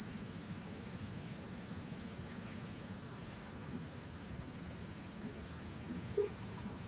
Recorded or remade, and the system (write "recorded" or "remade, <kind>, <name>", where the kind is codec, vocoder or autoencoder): remade, autoencoder, DAC-VAE